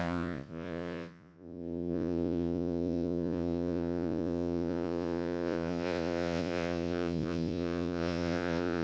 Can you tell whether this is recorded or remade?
remade